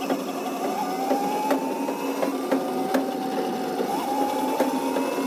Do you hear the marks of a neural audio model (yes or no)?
no